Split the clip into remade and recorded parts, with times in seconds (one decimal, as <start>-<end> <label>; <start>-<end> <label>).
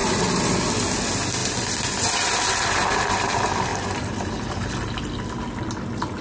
0.0-0.5 remade; 0.5-3.7 recorded; 3.7-4.7 remade; 4.7-6.2 recorded